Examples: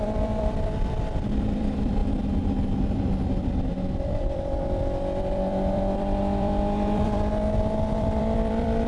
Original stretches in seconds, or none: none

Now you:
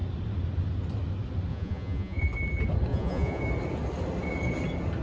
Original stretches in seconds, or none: 0.0-1.5; 2.2-2.9; 3.4-5.0

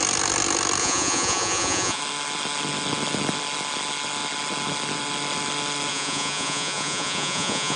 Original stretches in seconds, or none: 0.0-0.8; 2.0-5.9

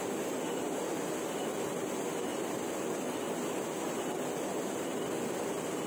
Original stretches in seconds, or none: 0.0-5.9

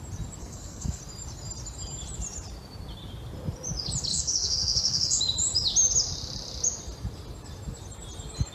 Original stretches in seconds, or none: 0.0-0.4; 1.0-4.1; 5.2-8.5

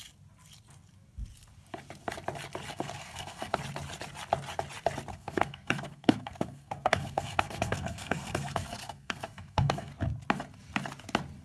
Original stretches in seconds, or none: 0.0-2.7; 3.6-5.1; 9.9-11.4